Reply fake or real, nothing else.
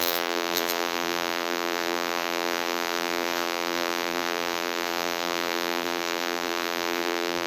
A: fake